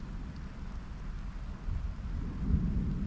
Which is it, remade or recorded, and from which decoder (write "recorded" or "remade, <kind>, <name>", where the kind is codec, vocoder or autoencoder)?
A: recorded